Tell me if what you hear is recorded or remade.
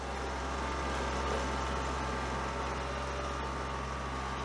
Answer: recorded